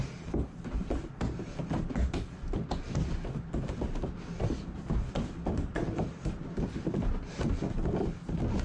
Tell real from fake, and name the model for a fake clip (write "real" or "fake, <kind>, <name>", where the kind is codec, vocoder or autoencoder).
real